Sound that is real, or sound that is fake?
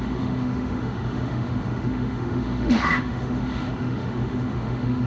fake